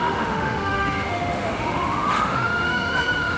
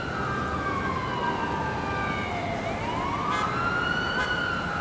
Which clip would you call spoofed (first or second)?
first